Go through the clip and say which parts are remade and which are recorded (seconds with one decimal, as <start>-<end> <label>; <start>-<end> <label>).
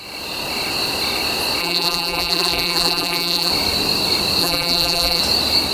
0.0-1.6 recorded; 1.6-3.5 remade; 3.5-4.4 recorded; 4.4-5.2 remade; 5.2-5.7 recorded